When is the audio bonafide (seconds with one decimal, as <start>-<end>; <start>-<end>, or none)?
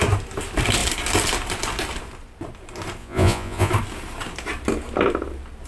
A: 0.0-3.0; 3.7-5.7